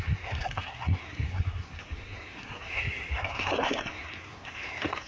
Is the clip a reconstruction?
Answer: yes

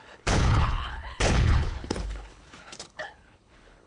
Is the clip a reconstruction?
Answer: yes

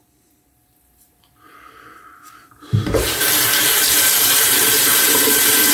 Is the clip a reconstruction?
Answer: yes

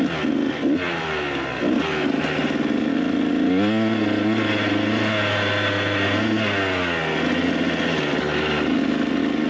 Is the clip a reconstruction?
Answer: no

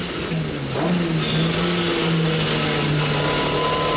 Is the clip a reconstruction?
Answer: no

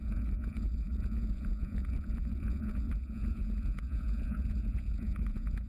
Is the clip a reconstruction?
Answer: yes